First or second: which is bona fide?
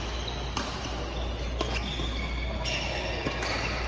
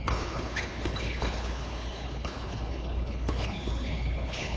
first